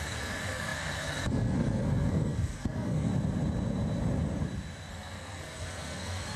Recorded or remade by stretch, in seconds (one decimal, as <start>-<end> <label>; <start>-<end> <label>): 0.0-3.1 remade; 3.1-4.9 recorded; 4.9-6.4 remade